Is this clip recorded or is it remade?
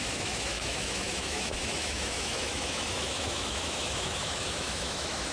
remade